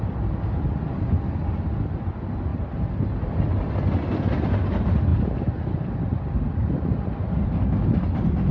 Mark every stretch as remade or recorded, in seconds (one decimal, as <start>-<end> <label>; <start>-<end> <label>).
0.0-8.5 recorded